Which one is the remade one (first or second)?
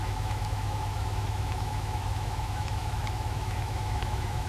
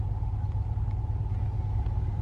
first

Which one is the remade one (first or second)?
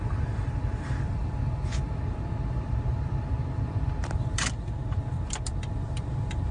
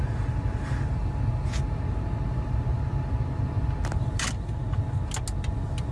first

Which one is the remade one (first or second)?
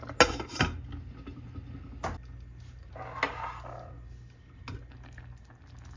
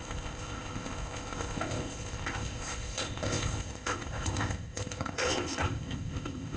second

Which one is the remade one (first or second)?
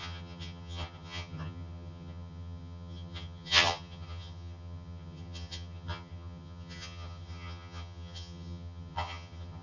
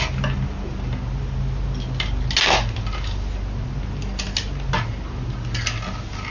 first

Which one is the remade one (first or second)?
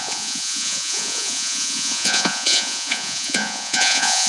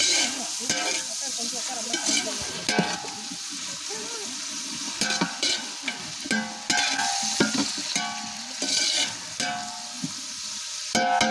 first